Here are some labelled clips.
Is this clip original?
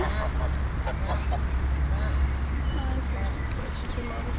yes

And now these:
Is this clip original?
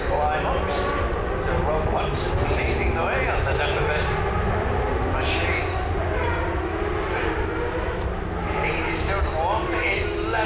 yes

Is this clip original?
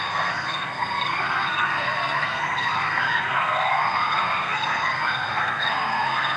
no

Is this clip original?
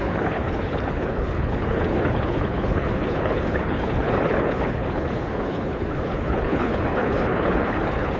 no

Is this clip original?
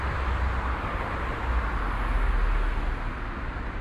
yes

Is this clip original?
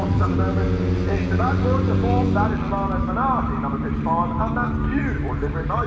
yes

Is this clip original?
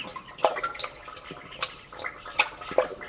yes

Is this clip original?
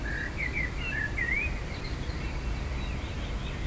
yes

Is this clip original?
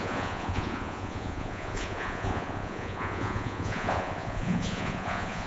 no